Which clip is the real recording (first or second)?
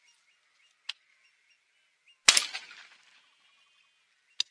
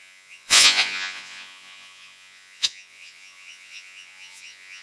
first